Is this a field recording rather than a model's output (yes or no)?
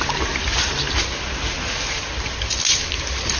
yes